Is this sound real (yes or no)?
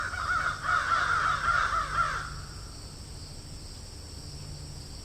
yes